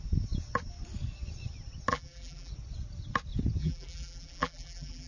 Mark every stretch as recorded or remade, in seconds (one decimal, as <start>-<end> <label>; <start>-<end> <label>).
0.0-1.9 recorded; 1.9-2.5 remade; 2.5-3.6 recorded; 3.6-5.1 remade